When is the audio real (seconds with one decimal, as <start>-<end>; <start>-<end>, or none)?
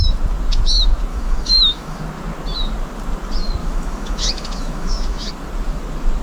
0.0-1.1; 2.0-3.6; 5.3-6.2